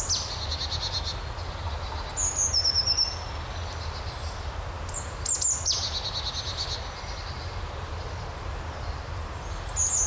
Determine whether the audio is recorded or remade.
recorded